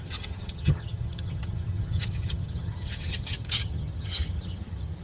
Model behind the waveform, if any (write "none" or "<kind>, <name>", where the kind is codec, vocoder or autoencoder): vocoder, HiFi-GAN